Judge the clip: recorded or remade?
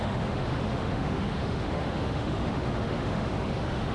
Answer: remade